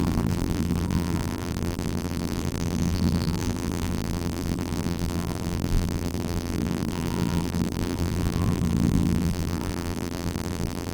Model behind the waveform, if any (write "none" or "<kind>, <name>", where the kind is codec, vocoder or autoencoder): vocoder, BigVGAN v2